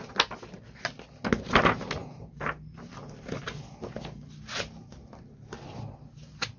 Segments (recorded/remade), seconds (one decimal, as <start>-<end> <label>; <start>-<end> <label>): 0.0-6.6 recorded